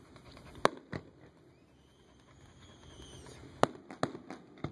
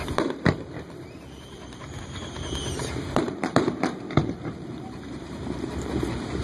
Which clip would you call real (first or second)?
first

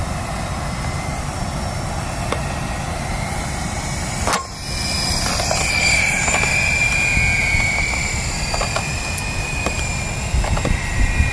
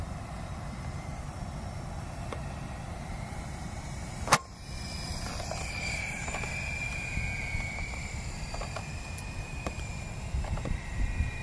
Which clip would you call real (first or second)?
first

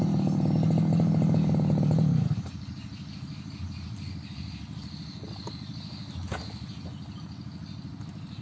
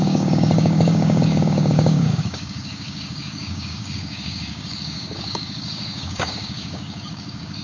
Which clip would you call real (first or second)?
first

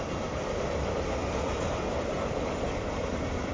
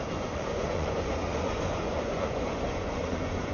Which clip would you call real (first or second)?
first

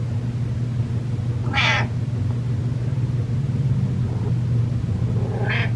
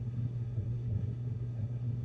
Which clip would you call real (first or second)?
first